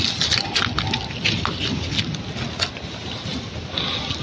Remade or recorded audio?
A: recorded